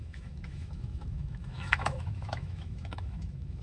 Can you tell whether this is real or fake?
fake